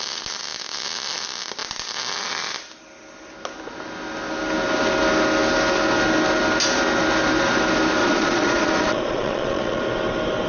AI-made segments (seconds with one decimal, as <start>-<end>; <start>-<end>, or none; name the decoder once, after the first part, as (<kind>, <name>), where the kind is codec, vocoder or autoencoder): 8.0-9.8 (vocoder, Vocos)